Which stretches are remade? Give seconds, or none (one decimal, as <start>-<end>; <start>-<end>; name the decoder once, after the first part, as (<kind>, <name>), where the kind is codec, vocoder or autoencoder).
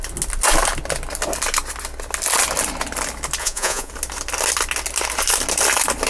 3.4-3.9 (vocoder, Vocos)